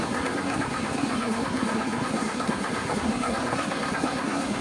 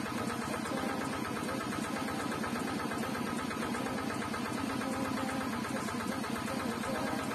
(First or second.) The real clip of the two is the second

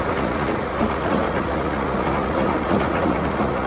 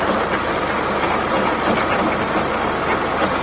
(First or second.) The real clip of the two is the second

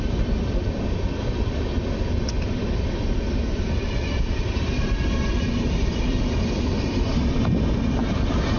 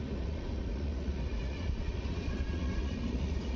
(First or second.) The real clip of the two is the first